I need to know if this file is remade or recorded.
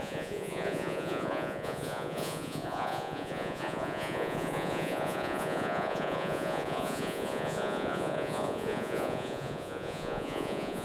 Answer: remade